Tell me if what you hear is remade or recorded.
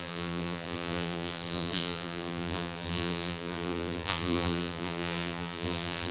remade